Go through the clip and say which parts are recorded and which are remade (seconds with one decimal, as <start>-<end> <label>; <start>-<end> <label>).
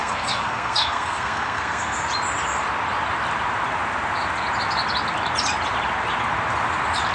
0.0-2.0 remade; 2.0-7.1 recorded